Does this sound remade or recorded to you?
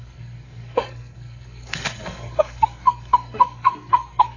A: remade